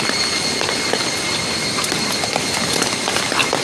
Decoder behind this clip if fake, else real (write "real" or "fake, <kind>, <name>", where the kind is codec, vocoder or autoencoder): real